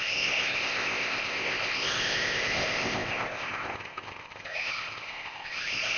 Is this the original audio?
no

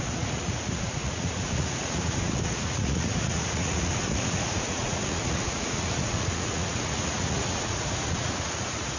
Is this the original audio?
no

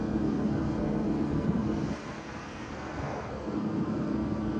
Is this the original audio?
no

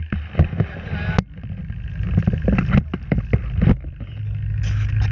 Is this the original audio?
yes